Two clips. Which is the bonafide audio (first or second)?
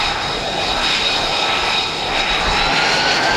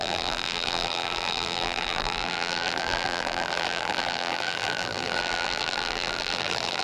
first